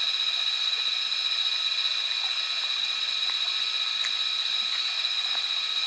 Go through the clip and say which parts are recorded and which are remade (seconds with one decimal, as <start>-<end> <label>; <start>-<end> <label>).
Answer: 0.0-5.9 recorded